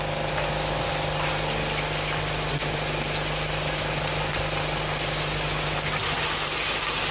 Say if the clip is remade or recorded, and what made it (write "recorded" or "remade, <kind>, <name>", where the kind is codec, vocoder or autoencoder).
recorded